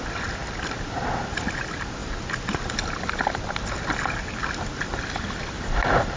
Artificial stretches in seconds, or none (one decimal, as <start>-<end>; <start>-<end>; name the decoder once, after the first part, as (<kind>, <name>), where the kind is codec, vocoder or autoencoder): none